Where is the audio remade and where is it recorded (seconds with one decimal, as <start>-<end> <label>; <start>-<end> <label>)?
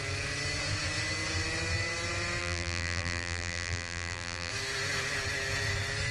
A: 0.0-2.4 recorded; 2.4-4.5 remade; 4.5-6.1 recorded